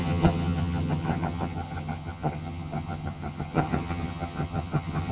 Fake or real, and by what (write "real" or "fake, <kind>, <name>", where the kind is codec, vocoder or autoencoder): fake, vocoder, HiFi-GAN